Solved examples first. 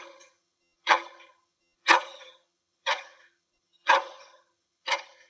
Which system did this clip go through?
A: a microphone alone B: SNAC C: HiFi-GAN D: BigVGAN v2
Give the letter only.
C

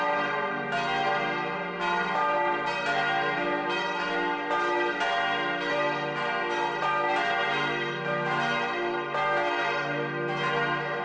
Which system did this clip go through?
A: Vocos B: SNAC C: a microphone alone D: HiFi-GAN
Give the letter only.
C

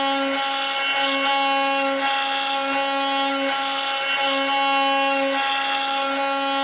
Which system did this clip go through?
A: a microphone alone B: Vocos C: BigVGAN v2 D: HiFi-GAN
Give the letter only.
A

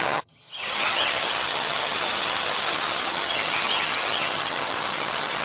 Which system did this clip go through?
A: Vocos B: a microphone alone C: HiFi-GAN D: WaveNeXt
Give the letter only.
C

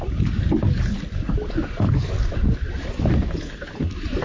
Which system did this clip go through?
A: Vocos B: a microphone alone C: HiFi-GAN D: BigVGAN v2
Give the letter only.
B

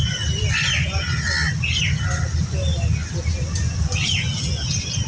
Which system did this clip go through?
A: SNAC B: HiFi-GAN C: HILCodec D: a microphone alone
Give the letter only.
D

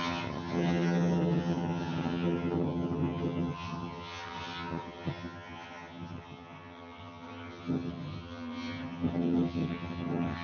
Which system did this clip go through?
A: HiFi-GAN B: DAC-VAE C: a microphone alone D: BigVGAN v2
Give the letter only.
A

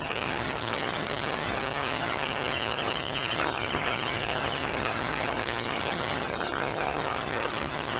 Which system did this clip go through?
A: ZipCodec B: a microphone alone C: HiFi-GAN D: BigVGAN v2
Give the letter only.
C